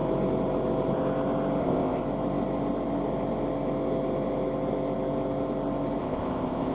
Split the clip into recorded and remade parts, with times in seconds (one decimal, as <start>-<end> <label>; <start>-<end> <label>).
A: 0.0-1.6 recorded; 1.6-2.0 remade; 2.0-6.0 recorded; 6.0-6.7 remade